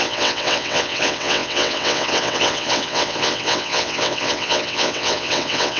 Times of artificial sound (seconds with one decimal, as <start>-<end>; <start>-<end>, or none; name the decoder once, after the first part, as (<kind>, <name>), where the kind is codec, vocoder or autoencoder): 0.0-5.8 (vocoder, WaveNeXt)